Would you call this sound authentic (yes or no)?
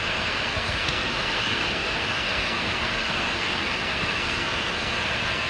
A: no